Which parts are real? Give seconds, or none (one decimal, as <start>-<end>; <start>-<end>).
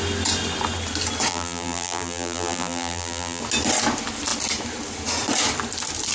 0.0-1.3; 3.4-6.1